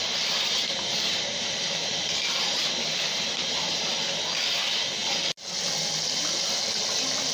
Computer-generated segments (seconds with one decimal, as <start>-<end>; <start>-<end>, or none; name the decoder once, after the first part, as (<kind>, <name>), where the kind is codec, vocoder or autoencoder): 0.0-4.0 (vocoder, BigVGAN v2)